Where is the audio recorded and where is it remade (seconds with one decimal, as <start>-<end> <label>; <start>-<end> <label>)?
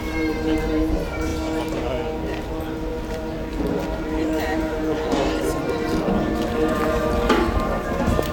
0.0-1.3 remade; 1.3-2.4 recorded; 2.4-8.3 remade